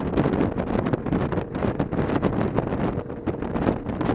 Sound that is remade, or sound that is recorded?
recorded